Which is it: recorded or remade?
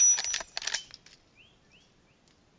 recorded